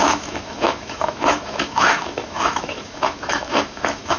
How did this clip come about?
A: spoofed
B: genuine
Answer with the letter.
A